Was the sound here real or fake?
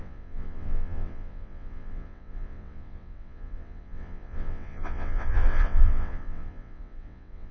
fake